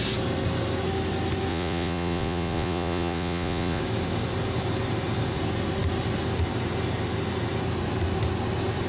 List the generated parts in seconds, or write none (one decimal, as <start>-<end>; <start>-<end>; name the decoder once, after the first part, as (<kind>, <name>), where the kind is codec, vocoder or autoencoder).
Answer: 1.5-3.8 (vocoder, Vocos)